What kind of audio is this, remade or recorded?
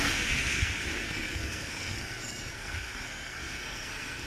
remade